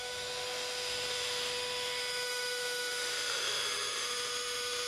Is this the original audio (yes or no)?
no